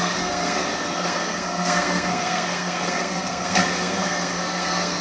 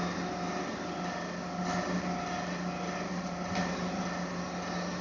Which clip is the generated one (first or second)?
first